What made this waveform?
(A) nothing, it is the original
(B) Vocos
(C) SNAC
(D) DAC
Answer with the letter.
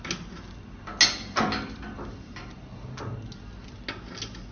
A